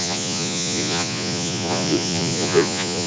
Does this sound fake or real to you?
fake